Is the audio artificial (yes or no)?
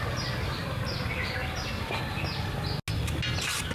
no